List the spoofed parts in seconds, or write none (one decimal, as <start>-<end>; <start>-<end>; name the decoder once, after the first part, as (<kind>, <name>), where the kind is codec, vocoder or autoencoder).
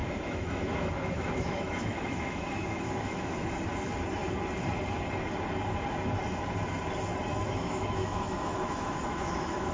0.0-3.5 (autoencoder, DAC-VAE); 7.3-9.7